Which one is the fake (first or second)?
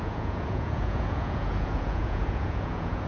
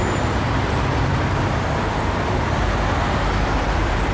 first